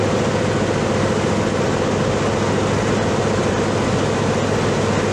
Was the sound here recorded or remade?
recorded